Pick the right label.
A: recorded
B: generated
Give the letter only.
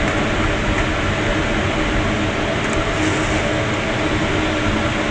A